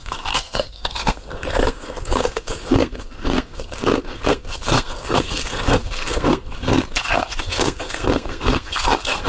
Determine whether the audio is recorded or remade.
remade